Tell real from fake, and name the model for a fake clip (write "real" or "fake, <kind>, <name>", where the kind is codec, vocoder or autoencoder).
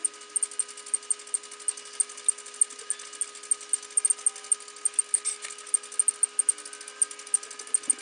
real